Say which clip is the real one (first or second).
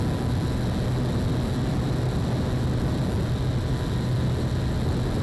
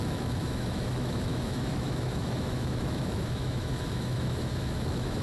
first